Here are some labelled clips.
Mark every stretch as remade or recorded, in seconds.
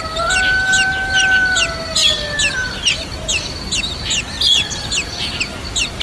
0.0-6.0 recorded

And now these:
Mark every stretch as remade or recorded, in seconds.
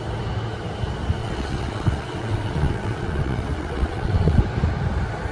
0.0-1.2 recorded; 1.2-4.4 remade; 4.4-5.3 recorded